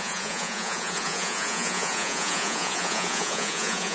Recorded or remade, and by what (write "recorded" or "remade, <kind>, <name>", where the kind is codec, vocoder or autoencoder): remade, vocoder, Vocos